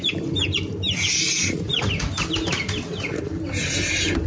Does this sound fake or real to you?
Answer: real